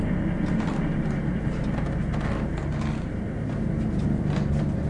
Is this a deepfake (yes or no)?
no